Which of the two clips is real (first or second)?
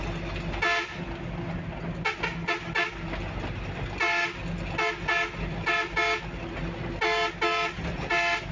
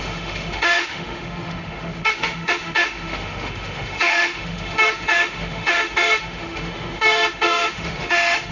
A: first